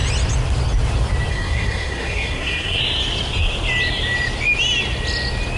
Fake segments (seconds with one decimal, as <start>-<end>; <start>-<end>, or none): 1.3-2.8